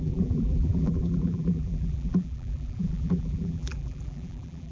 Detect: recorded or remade remade